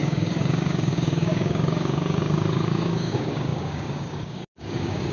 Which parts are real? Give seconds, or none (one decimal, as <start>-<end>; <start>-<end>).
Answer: none